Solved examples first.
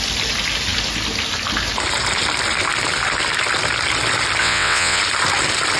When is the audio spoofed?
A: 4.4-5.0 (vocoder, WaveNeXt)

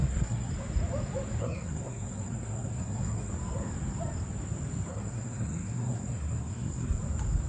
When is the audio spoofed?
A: 0.0-0.5 (codec, SNAC); 1.4-3.3; 4.9-7.0

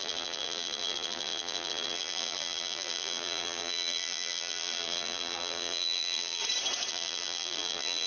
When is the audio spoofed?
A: 0.0-6.4 (vocoder, BigVGAN v2); 6.9-8.1

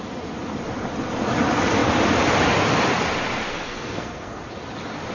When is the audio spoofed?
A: 3.5-4.4 (codec, SNAC)

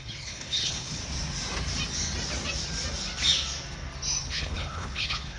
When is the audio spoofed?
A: 0.0-1.0 (codec, HILCodec); 4.2-5.4

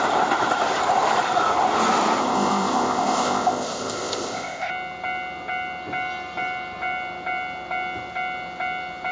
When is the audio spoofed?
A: 2.2-4.7 (codec, ZipCodec)

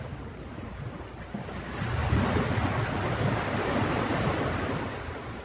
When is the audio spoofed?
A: none